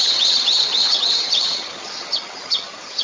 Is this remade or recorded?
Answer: remade